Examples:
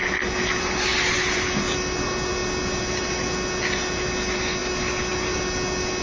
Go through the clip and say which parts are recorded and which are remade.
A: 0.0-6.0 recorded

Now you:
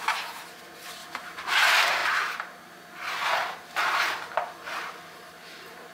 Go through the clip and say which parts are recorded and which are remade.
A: 0.0-3.4 remade; 3.4-5.1 recorded; 5.1-5.9 remade